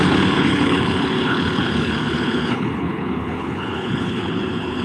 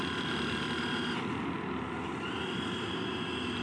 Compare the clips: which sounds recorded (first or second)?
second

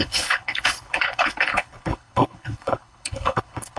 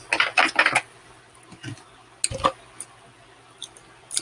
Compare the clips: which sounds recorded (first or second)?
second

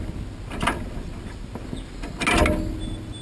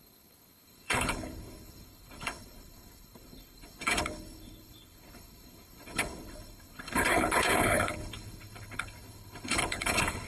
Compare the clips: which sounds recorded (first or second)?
first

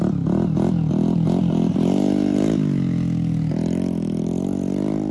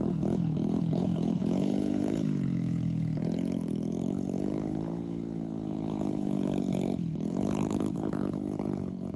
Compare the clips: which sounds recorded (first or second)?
first